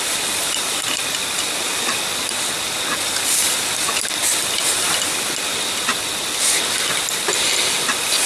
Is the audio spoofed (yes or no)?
no